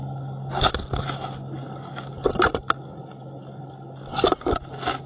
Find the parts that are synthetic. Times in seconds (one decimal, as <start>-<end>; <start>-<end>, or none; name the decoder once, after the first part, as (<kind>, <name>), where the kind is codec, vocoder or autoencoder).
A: none